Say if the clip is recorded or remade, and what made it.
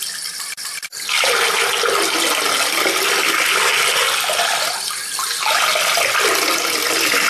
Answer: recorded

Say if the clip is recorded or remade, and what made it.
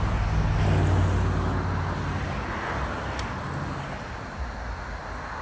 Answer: recorded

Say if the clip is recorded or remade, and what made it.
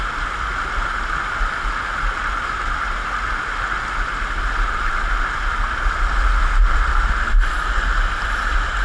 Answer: recorded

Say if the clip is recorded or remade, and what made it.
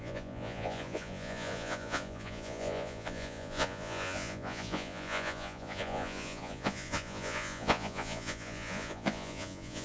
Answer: remade, vocoder, Vocos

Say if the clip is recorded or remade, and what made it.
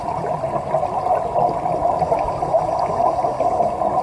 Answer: recorded